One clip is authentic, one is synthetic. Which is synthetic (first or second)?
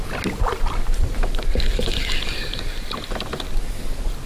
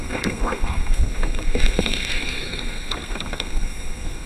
second